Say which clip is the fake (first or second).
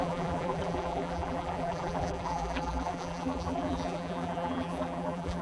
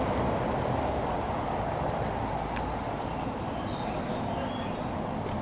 first